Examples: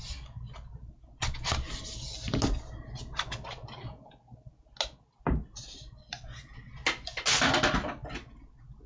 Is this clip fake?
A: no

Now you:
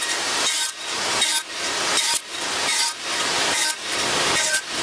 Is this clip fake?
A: yes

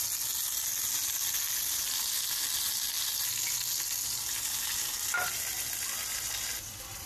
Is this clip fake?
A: no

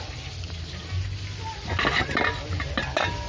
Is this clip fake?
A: no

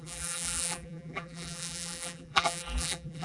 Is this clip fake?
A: yes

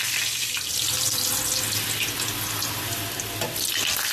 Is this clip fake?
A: no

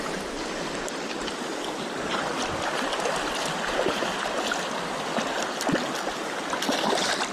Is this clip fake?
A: no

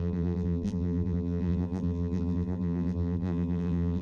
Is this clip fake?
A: yes